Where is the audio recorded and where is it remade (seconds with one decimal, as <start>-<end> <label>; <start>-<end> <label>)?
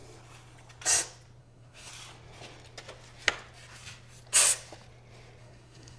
0.0-1.4 recorded; 1.4-1.9 remade; 1.9-5.4 recorded; 5.4-6.0 remade